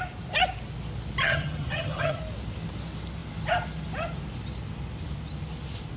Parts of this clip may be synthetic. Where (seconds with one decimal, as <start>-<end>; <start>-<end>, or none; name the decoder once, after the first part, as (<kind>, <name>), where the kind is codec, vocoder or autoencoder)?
1.2-2.2 (vocoder, HiFi-GAN)